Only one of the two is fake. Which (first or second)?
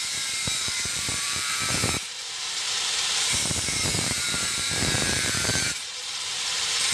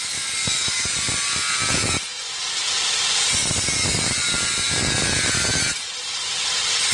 first